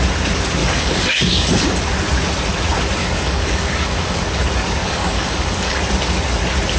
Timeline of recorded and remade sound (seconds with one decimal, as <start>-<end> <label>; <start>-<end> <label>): 0.0-0.6 recorded; 0.6-1.8 remade; 1.8-3.0 recorded; 3.0-4.2 remade; 4.2-4.8 recorded; 4.8-5.8 remade; 5.8-6.8 recorded